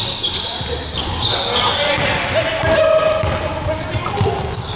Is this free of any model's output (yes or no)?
yes